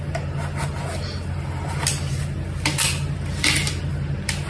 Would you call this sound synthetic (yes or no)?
no